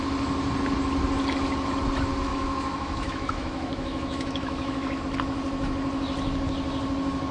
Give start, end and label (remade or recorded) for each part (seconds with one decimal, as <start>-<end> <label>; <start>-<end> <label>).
0.0-2.3 recorded; 2.3-5.0 remade; 5.0-7.3 recorded